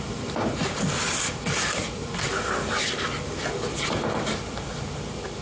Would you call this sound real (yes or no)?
yes